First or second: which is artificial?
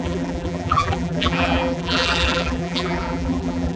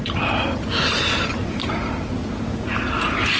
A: first